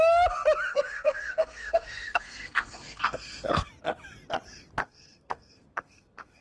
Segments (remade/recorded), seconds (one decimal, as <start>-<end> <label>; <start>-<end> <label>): 0.0-0.7 recorded; 0.7-3.7 remade; 3.7-4.8 recorded; 4.8-6.4 remade